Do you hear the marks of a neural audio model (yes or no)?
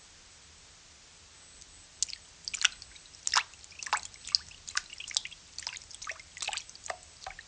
no